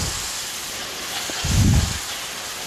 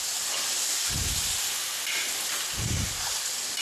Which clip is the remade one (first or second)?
second